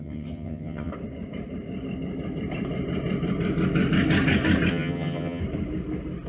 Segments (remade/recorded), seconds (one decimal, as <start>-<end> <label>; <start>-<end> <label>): 0.0-0.9 remade; 0.9-4.7 recorded; 4.7-5.4 remade; 5.4-6.3 recorded